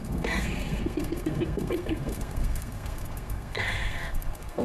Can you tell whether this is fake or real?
fake